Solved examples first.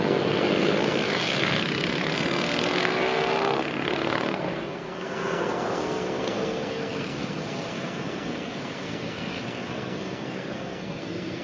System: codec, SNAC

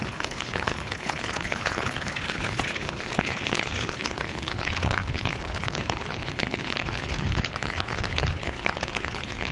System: codec, HILCodec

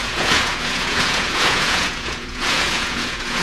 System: vocoder, Vocos